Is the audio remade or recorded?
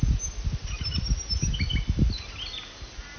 recorded